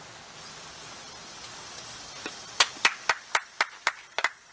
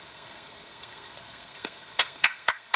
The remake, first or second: second